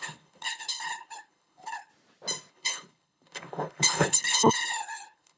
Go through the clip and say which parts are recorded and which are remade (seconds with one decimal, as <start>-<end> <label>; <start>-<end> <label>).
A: 0.0-1.9 remade; 1.9-2.5 recorded; 2.5-5.4 remade